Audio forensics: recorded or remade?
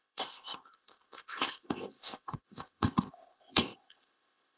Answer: remade